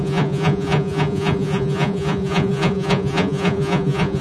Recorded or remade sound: remade